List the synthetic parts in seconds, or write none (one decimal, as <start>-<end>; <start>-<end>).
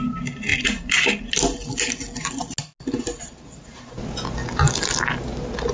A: none